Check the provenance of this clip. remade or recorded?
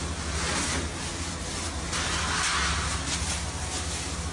recorded